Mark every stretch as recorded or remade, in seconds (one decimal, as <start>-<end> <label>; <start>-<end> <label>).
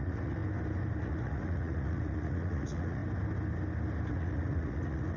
0.0-0.4 remade; 0.4-1.0 recorded; 1.0-3.0 remade; 3.0-4.1 recorded; 4.1-5.2 remade